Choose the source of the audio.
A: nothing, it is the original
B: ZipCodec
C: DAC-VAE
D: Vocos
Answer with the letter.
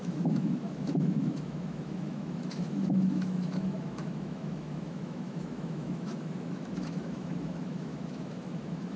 C